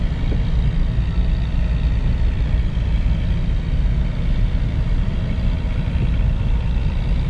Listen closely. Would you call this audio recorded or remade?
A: recorded